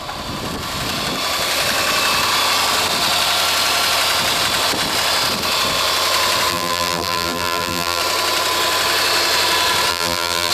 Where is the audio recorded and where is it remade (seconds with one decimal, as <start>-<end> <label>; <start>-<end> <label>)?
0.0-6.5 recorded; 6.5-8.0 remade; 8.0-9.9 recorded; 9.9-10.5 remade